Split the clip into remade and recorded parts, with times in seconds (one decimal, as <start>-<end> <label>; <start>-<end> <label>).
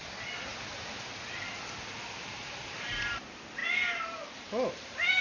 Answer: 0.0-2.4 recorded; 2.4-3.6 remade; 3.6-4.2 recorded; 4.2-5.2 remade